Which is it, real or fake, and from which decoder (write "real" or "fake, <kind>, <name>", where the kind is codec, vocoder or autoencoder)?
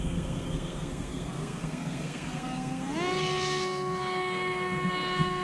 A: fake, codec, SNAC